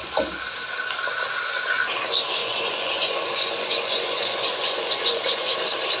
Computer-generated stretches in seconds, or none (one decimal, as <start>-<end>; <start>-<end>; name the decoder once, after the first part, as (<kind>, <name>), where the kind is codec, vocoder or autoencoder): 2.4-5.6 (vocoder, Vocos)